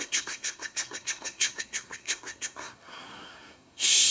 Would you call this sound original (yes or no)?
no